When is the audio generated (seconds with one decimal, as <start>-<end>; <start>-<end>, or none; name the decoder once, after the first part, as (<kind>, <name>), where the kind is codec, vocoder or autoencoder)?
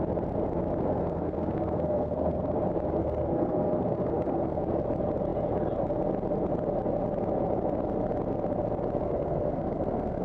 0.9-2.6 (codec, SNAC); 3.0-4.6; 9.0-10.2